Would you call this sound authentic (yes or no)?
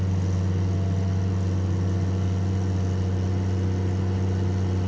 yes